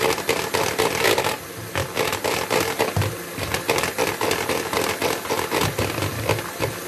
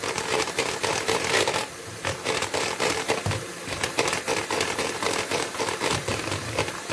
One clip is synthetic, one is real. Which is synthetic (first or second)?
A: second